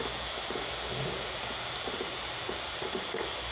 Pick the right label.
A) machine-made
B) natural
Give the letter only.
B